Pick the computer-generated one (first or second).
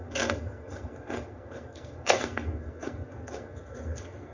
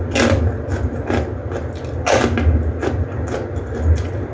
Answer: first